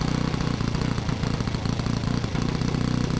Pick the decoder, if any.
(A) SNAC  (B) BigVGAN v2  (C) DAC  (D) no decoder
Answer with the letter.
D